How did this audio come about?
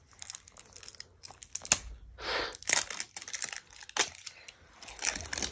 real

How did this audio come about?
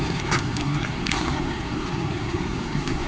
fake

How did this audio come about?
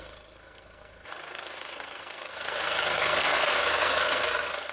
fake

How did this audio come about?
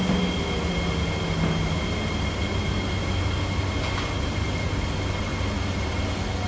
real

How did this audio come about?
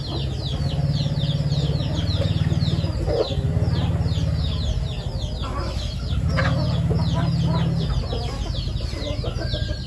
real